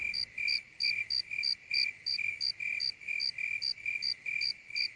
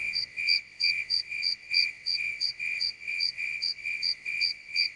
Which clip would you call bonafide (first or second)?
first